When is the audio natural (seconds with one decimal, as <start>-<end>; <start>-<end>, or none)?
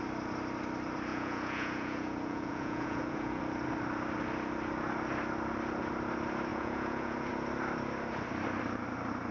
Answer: 0.0-1.1; 3.4-6.5; 7.3-9.3